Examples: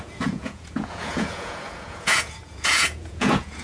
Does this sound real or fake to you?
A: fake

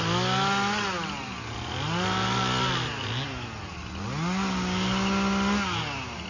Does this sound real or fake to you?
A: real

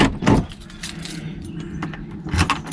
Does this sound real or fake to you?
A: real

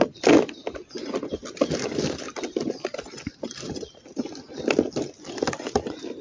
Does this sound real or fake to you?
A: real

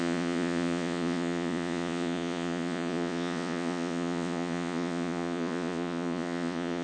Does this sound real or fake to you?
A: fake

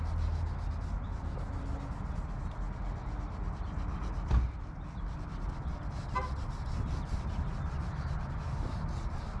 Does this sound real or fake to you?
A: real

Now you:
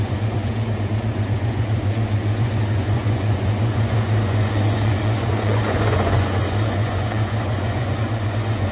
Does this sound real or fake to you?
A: fake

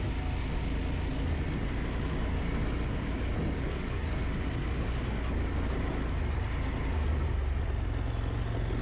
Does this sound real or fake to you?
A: real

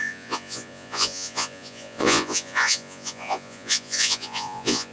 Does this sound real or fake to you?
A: fake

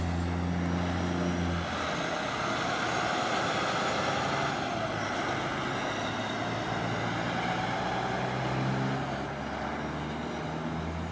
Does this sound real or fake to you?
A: real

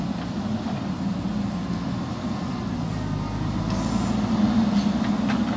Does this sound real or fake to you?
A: real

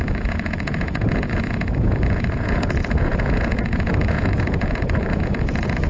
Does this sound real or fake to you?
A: fake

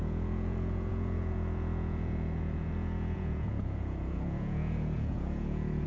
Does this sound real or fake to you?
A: fake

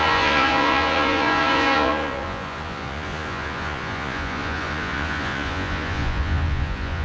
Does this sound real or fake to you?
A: fake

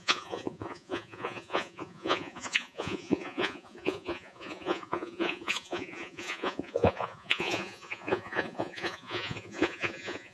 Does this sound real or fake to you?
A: fake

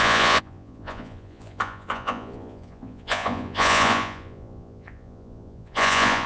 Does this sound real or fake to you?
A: fake